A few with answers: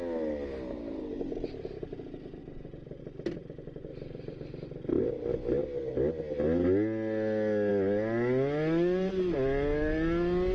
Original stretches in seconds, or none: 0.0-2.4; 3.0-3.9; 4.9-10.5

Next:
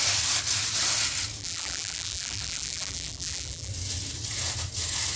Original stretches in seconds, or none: 0.0-1.4; 3.7-5.2

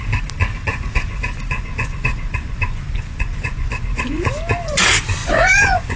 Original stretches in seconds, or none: 0.0-0.7; 4.3-5.2

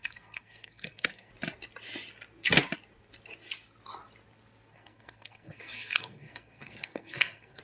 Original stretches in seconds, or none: 1.3-4.7

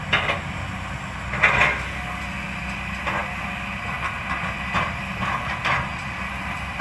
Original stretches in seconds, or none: 0.0-6.8

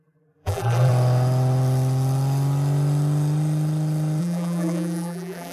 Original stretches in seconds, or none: 0.9-4.2

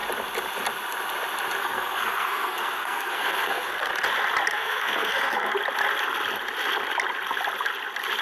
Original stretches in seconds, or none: 0.0-1.6; 3.9-4.5; 5.5-8.2